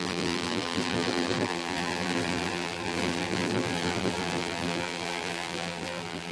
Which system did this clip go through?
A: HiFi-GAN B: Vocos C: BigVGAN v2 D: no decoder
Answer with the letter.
C